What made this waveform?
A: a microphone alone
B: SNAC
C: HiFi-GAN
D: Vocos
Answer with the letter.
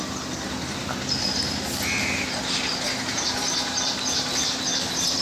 A